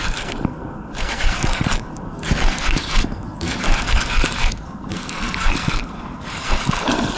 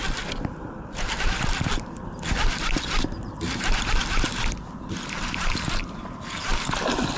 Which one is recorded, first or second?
second